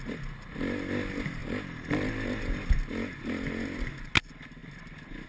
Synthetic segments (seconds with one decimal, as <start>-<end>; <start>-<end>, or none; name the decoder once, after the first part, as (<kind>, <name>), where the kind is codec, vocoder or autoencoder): none